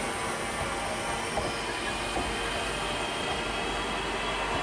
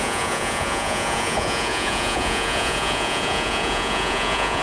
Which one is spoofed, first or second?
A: second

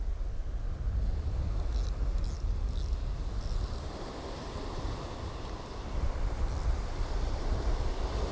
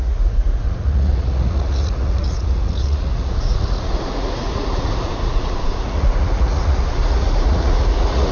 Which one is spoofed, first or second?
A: second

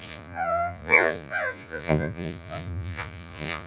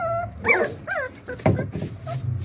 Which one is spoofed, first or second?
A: first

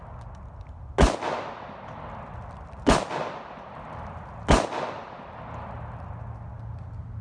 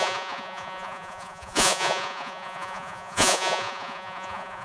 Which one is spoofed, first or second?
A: second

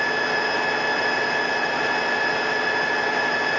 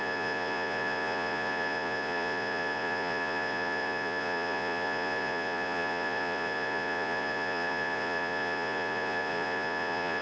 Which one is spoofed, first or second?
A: second